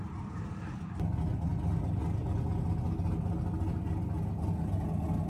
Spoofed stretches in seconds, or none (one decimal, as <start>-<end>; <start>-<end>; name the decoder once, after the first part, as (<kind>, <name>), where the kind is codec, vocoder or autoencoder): none